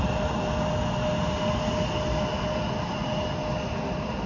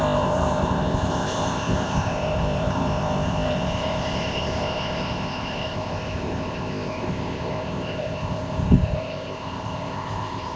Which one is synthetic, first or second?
second